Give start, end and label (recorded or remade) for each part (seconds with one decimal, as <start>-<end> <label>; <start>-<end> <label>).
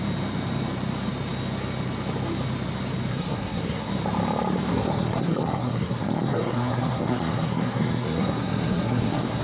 0.0-3.1 recorded; 3.1-3.9 remade; 3.9-4.7 recorded; 4.7-9.4 remade